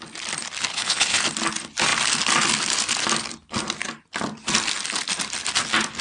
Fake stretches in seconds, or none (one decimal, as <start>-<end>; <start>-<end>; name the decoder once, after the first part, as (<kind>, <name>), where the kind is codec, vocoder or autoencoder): 0.7-1.2 (codec, HILCodec)